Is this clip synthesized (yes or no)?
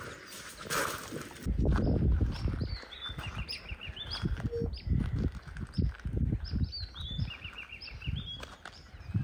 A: no